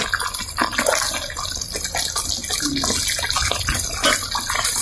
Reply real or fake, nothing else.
real